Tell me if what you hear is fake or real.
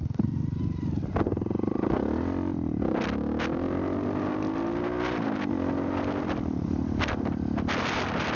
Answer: real